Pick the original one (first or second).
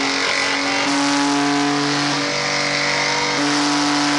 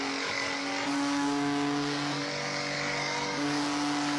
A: first